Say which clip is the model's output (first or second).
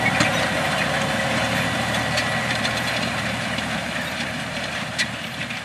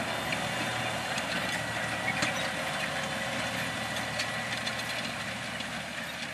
first